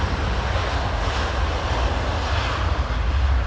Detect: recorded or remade recorded